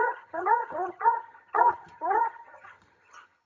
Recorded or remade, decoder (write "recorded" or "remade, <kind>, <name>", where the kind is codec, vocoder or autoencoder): remade, vocoder, HiFi-GAN